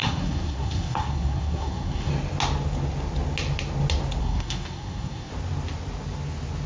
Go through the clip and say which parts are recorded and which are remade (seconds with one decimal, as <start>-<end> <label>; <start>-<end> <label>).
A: 0.0-2.1 remade; 2.1-4.2 recorded; 4.2-5.3 remade; 5.3-6.7 recorded